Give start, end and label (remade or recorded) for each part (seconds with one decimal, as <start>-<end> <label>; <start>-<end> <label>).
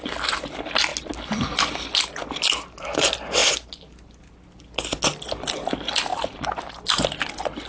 0.0-7.7 recorded